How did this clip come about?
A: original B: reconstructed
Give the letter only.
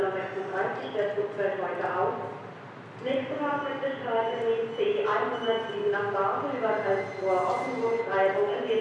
A